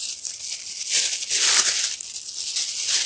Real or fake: real